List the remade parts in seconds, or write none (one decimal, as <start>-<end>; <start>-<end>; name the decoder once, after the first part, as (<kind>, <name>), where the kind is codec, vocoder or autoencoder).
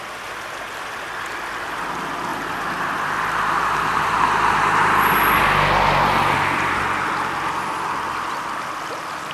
2.3-4.1 (vocoder, BigVGAN v2)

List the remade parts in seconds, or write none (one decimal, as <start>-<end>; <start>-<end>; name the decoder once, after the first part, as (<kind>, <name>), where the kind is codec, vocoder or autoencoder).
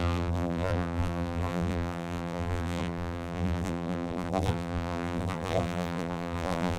0.0-6.8 (vocoder, BigVGAN v2)